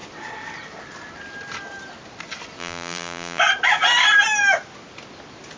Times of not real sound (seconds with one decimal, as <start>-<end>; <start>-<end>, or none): 2.6-3.4

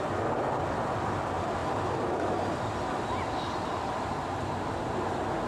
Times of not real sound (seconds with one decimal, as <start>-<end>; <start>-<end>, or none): none

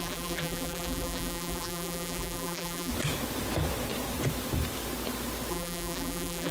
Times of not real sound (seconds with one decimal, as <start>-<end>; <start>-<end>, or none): 0.0-2.9; 5.5-6.5

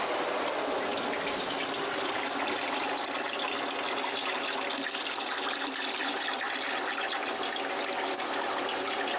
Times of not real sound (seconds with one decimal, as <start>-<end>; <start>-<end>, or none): none

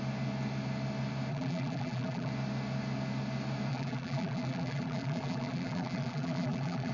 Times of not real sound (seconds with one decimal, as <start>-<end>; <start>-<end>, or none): 1.3-2.3; 3.7-6.9